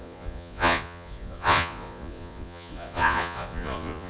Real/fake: fake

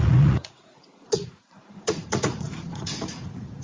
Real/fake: fake